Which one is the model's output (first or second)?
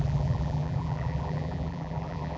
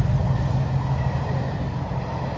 first